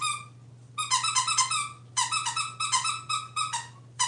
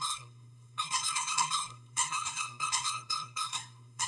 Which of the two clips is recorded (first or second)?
first